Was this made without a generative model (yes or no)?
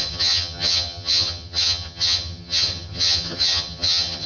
no